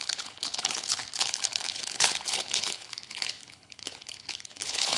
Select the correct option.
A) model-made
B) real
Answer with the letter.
A